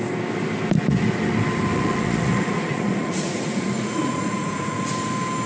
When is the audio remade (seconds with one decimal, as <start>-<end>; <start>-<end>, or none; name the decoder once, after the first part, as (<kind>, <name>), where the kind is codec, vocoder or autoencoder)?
1.7-4.9 (vocoder, Vocos)